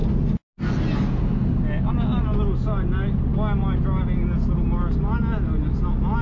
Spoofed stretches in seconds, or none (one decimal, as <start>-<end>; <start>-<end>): none